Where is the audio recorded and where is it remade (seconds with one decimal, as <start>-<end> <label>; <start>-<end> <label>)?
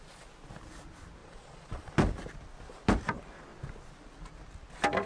0.0-1.2 recorded; 1.2-1.9 remade; 1.9-5.1 recorded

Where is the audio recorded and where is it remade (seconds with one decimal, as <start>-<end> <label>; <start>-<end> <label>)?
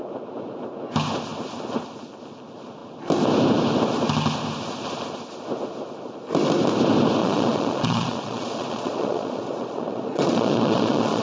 0.0-7.2 recorded; 7.2-11.2 remade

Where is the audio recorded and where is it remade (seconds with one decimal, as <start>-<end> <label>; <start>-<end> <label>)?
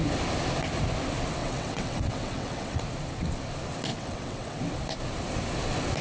0.0-1.4 recorded; 1.4-2.8 remade; 2.8-3.9 recorded; 3.9-4.6 remade; 4.6-6.0 recorded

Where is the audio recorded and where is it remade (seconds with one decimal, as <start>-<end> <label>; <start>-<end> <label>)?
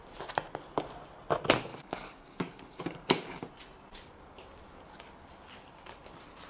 0.0-1.7 recorded; 1.7-3.4 remade; 3.4-6.5 recorded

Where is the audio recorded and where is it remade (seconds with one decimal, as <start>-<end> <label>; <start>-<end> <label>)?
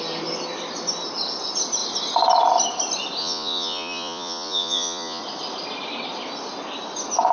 0.0-3.2 recorded; 3.2-5.2 remade; 5.2-7.3 recorded